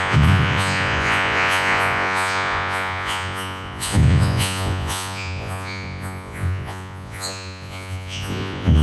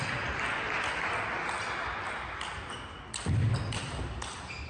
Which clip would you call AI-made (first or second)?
first